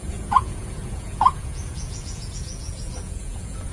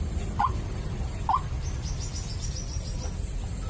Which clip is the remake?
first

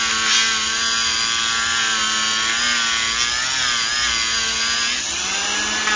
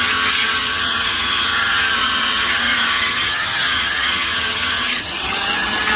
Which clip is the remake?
second